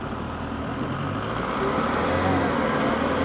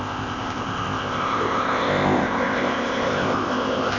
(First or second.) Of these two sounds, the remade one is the second